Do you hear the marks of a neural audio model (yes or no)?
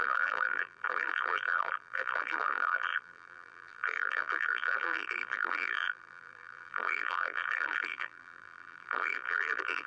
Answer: yes